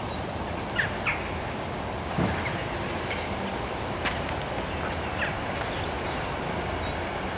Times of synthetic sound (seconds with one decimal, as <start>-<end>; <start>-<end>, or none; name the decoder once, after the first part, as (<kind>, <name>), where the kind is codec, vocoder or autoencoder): none